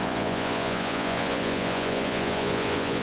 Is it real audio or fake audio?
fake